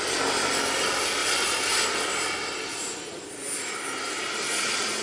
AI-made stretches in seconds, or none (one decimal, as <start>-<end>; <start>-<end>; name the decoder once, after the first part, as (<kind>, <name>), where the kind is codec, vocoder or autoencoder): none

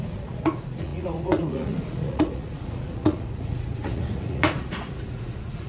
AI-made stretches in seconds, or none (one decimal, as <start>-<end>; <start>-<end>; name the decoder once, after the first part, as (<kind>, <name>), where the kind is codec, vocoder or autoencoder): 0.0-5.7 (vocoder, Vocos)